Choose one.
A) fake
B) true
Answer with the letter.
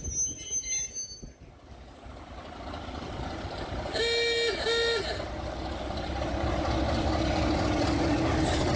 B